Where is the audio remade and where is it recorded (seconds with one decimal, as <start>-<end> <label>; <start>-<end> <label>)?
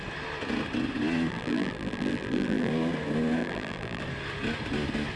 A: 0.0-1.3 recorded; 1.3-2.7 remade; 2.7-3.4 recorded; 3.4-4.0 remade; 4.0-5.2 recorded